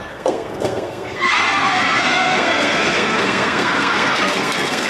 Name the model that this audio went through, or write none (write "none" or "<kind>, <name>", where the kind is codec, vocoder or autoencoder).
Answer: codec, SNAC